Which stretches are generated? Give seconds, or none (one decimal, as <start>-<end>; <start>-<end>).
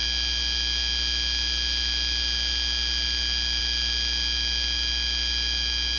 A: none